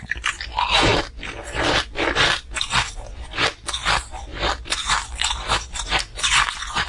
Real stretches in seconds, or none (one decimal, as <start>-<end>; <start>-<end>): 0.0-6.9